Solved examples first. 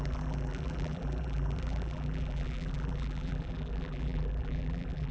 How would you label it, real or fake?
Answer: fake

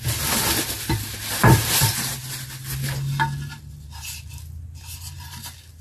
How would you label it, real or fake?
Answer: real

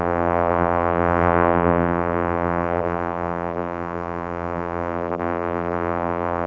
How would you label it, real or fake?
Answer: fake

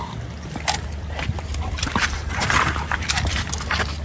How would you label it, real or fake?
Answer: real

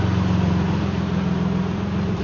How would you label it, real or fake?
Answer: fake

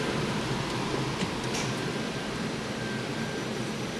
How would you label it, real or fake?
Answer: fake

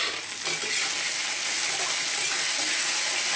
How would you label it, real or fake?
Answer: real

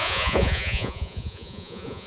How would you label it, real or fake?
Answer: fake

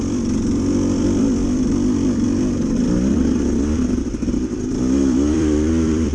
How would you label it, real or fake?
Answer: fake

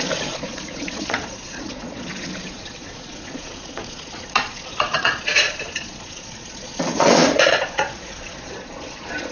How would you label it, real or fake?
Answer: fake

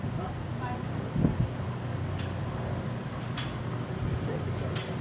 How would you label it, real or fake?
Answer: real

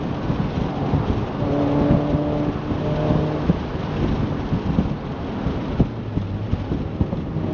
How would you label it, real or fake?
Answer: real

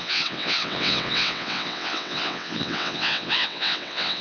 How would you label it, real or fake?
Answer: fake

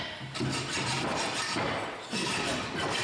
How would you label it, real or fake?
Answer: real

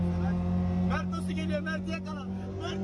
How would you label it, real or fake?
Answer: real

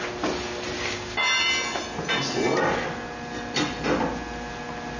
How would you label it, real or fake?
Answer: real